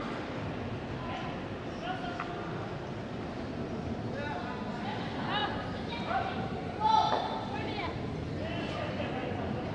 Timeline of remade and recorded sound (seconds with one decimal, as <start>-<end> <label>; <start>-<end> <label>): 0.0-5.4 recorded; 5.4-9.0 remade; 9.0-9.7 recorded